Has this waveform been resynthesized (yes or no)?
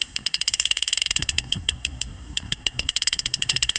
yes